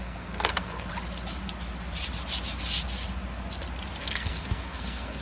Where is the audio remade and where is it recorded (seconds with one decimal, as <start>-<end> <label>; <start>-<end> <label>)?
0.0-0.9 remade; 0.9-4.0 recorded; 4.0-5.2 remade